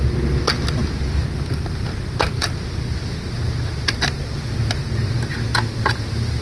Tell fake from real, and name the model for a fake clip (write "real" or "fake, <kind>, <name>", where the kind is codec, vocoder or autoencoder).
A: real